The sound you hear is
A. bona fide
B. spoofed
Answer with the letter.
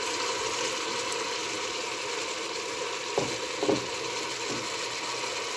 A